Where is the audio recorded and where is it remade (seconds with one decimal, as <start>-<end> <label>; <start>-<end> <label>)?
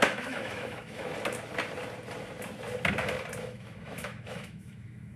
0.0-1.1 remade; 1.1-3.4 recorded; 3.4-5.2 remade